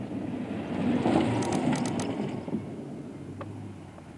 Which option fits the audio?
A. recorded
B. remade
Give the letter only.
A